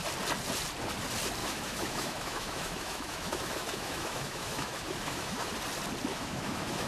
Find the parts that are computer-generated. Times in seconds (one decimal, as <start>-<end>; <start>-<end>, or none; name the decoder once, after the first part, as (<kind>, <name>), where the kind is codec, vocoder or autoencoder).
1.4-5.5 (autoencoder, DAC-VAE); 6.1-6.9